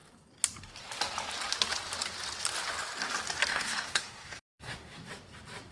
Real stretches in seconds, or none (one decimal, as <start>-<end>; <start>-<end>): 0.0-3.5; 5.1-5.7